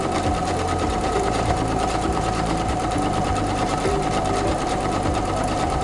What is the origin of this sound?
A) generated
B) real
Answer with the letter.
A